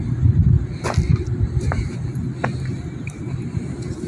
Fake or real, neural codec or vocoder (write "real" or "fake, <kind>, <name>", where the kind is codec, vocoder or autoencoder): real